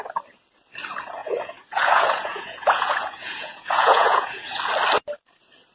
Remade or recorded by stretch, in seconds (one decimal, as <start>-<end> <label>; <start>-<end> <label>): 0.0-1.2 recorded; 1.2-4.6 remade; 4.6-5.7 recorded